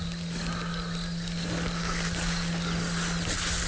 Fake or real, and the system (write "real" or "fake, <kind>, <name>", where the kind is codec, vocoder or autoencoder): real